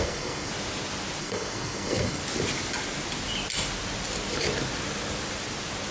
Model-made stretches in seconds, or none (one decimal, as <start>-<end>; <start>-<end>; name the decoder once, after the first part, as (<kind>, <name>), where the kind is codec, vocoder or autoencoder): 0.0-0.5 (codec, SNAC); 1.2-2.2